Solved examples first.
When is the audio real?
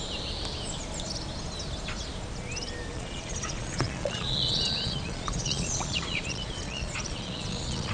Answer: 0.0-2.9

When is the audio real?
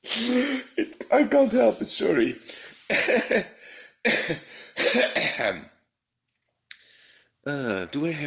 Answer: 0.0-6.0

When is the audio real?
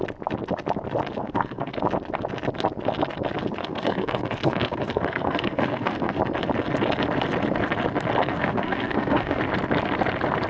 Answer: 0.0-1.2; 1.7-3.6; 6.2-8.2; 9.4-10.5